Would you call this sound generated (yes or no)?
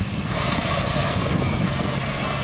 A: yes